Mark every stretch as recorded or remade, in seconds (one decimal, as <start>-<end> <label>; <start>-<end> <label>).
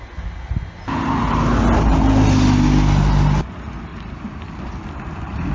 0.0-3.9 recorded; 3.9-4.7 remade; 4.7-5.5 recorded